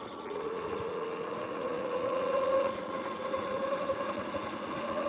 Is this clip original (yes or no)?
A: no